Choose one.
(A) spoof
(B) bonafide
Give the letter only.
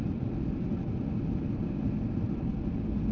B